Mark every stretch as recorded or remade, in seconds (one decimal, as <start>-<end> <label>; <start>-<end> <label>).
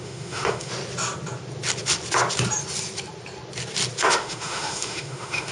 0.0-0.7 remade; 0.7-4.0 recorded; 4.0-5.5 remade